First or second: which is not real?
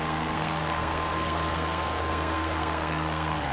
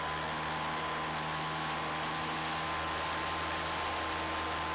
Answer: first